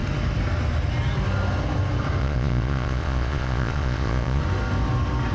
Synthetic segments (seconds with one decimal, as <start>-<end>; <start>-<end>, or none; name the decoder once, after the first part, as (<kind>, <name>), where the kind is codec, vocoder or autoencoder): 2.2-4.4 (vocoder, Vocos)